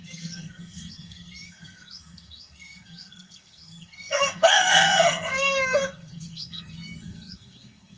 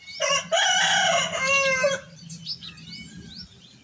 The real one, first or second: second